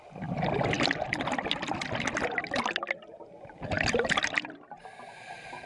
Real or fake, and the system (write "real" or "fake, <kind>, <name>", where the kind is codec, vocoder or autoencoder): real